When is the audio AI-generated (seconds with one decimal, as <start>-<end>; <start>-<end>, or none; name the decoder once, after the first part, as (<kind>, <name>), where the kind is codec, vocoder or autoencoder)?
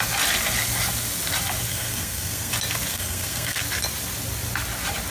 1.7-2.5 (codec, SNAC); 2.9-3.6